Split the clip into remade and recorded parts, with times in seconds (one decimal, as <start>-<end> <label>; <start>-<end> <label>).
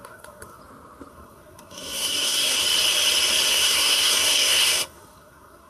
0.0-0.6 remade; 0.6-1.1 recorded; 1.1-2.6 remade; 2.6-3.5 recorded; 3.5-5.7 remade